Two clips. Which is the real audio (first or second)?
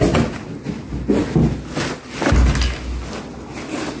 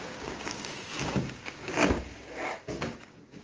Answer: first